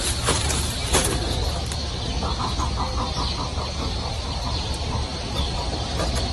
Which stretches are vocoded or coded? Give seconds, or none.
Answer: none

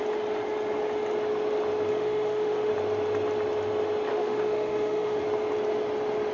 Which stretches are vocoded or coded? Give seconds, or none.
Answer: 1.9-2.7 (autoencoder, DAC-VAE); 4.1-5.2

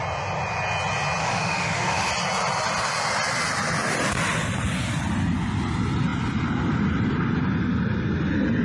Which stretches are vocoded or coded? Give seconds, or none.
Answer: 1.2-2.1 (autoencoder, DAC-VAE)

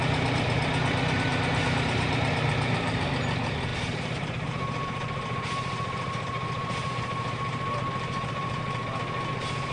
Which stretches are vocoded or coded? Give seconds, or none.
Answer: 1.3-3.1 (vocoder, BigVGAN v2); 3.7-8.6

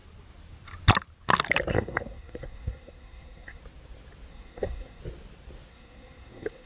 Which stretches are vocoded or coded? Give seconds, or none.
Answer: 1.7-3.6 (codec, SNAC); 4.3-5.0; 5.7-6.7

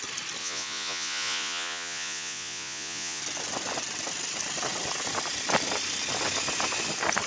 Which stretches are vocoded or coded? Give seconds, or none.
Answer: 0.4-3.2 (vocoder, Vocos)

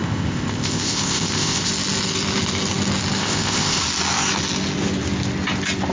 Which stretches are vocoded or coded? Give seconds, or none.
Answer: 0.0-1.7 (codec, ZipCodec); 3.2-3.8